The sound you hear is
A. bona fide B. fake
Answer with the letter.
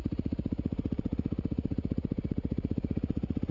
B